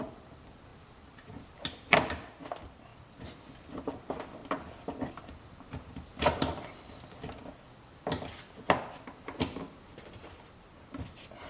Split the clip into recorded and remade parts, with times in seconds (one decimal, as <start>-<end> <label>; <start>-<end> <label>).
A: 0.0-2.9 remade; 2.9-3.4 recorded; 3.4-4.4 remade; 4.4-5.1 recorded; 5.1-6.1 remade; 6.1-9.7 recorded; 9.7-11.5 remade